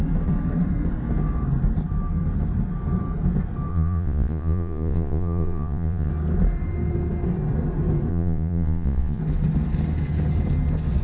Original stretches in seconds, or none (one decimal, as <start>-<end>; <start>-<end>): 0.0-3.7; 6.1-8.1; 9.2-11.0

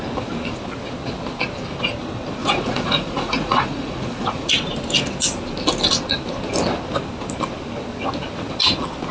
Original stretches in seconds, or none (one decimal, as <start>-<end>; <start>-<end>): 0.0-2.4; 4.5-9.1

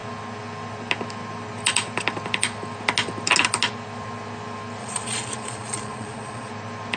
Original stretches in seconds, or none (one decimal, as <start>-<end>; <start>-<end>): 0.0-4.8; 6.5-7.0

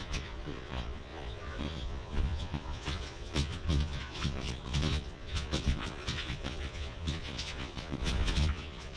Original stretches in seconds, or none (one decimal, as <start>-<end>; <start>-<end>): none

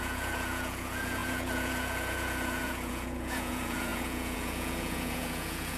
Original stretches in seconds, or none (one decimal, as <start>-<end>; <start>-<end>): none

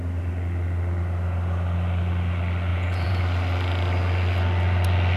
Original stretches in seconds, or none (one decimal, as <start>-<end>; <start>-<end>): 0.0-2.7; 3.2-5.2

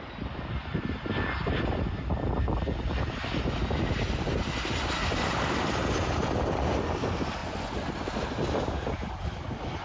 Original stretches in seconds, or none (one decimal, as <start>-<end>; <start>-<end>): 0.0-7.4; 7.9-9.8

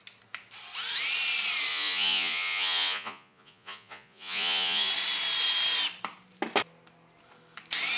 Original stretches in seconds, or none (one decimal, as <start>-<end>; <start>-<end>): 0.0-1.7; 4.9-8.0